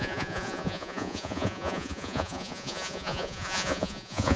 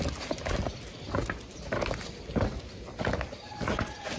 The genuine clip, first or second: second